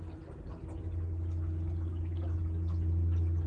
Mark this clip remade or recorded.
recorded